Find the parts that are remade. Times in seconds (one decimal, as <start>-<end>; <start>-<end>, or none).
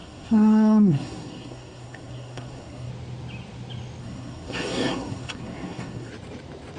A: 0.0-2.9; 4.0-6.1